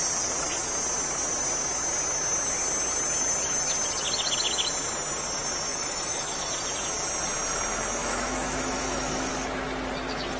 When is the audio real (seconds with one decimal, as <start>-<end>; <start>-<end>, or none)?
0.0-5.7; 6.5-8.0; 9.3-10.4